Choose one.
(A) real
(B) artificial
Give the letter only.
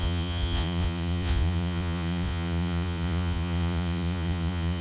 B